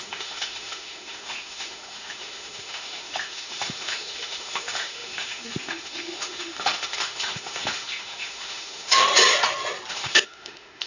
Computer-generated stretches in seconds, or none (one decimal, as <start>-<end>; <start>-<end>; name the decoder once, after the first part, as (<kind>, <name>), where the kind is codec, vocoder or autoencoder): 0.0-9.1 (autoencoder, DAC-VAE); 9.9-10.9